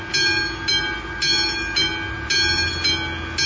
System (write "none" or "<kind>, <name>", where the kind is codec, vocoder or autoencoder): none